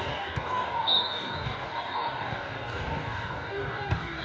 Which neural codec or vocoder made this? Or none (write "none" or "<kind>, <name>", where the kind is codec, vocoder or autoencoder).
codec, DAC